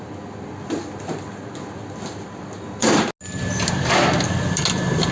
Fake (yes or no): no